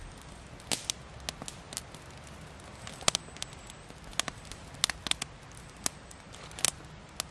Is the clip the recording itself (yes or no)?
yes